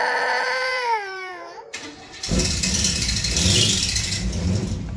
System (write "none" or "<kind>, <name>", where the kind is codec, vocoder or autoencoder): vocoder, BigVGAN v2